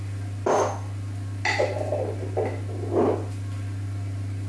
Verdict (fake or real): real